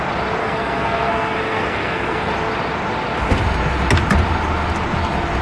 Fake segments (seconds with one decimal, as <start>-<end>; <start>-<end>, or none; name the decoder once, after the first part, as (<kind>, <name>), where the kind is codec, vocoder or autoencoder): 0.4-2.3 (codec, SNAC)